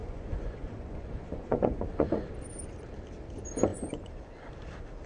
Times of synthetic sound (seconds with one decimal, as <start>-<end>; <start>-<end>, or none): 0.0-2.2; 3.7-4.5